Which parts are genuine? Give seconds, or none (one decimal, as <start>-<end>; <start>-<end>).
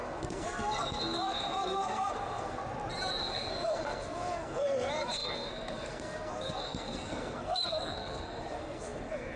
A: 2.6-3.2